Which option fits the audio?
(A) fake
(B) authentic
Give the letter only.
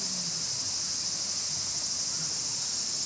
B